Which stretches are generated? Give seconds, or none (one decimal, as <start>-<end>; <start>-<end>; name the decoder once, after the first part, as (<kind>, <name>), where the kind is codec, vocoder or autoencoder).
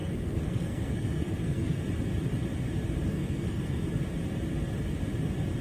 0.0-1.8 (codec, SNAC); 3.1-3.8